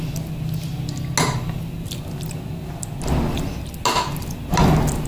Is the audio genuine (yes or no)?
yes